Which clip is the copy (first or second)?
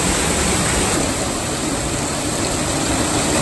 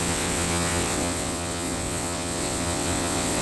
second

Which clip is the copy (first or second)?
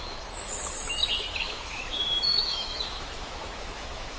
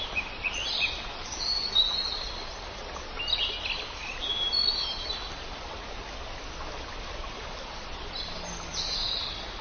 first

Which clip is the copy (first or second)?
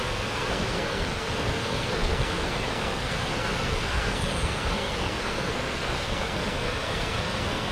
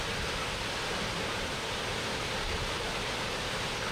first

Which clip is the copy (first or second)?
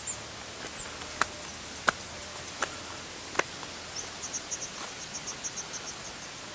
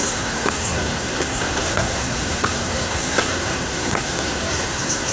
second